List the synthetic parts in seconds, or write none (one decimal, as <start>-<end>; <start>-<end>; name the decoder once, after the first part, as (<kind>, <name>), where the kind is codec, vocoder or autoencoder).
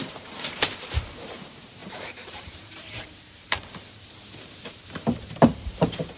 0.0-6.2 (vocoder, BigVGAN v2)